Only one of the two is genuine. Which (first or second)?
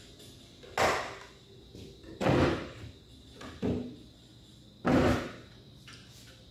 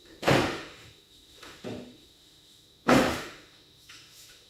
first